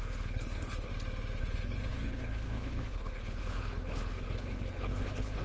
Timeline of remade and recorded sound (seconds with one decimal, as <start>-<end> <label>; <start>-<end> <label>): 0.0-0.9 remade; 0.9-1.4 recorded; 1.4-5.4 remade